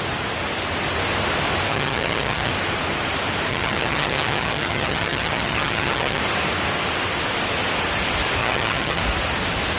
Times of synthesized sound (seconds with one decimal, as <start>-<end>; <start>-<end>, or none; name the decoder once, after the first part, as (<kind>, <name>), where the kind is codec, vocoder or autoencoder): 1.7-2.5 (vocoder, HiFi-GAN); 3.5-6.2; 8.4-9.0